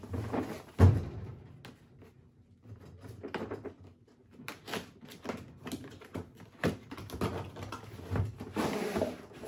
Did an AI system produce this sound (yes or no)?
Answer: no